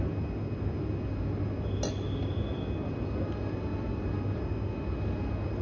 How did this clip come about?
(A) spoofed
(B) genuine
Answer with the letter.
B